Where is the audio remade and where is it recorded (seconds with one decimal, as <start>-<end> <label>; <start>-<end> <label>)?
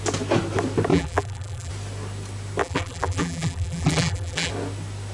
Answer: 0.0-0.9 recorded; 0.9-1.7 remade; 1.7-2.6 recorded; 2.6-4.5 remade; 4.5-5.1 recorded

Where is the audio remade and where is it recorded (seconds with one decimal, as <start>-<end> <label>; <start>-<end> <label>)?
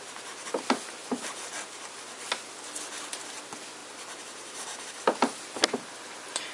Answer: 0.0-3.8 recorded; 3.8-4.9 remade; 4.9-6.5 recorded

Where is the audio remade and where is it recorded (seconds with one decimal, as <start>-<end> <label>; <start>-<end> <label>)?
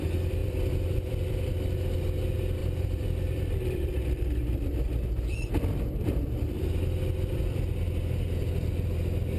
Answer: 0.0-0.4 recorded; 0.4-1.5 remade; 1.5-2.6 recorded; 2.6-7.6 remade; 7.6-9.4 recorded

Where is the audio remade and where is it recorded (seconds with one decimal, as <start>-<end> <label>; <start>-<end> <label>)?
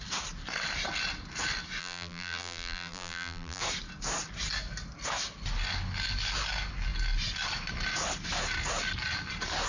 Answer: 0.0-1.8 recorded; 1.8-3.6 remade; 3.6-9.7 recorded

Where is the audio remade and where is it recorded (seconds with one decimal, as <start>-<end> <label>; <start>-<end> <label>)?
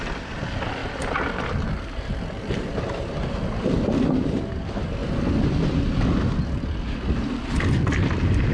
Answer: 0.0-8.5 recorded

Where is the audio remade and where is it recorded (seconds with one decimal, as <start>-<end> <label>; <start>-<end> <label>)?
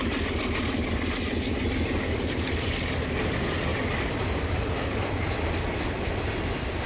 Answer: 0.0-3.7 recorded; 3.7-4.6 remade; 4.6-6.9 recorded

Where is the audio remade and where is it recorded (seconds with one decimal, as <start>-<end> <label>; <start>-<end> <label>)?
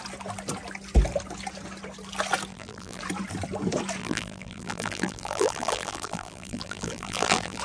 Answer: 0.0-2.5 recorded; 2.5-3.0 remade; 3.0-4.0 recorded; 4.0-7.6 remade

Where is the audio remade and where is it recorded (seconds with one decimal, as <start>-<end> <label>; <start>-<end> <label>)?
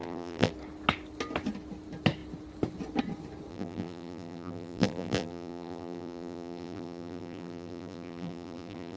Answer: 0.0-0.5 remade; 0.5-3.5 recorded; 3.5-9.0 remade